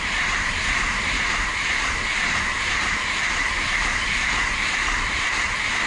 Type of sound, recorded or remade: remade